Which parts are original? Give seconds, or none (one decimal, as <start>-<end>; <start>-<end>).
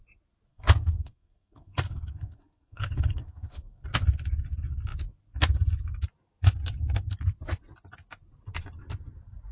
0.0-0.5; 3.8-9.5